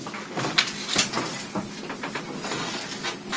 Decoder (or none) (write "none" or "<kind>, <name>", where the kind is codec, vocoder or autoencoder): none